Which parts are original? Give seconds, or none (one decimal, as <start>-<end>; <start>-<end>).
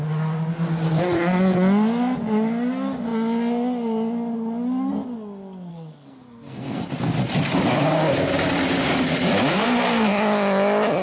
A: 0.0-5.7; 6.9-11.0